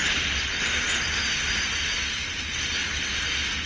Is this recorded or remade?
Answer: recorded